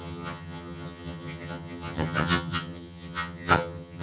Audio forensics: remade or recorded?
remade